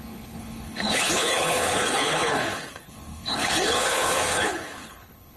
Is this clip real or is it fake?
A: fake